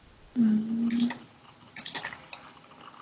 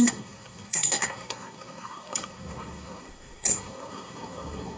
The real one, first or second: first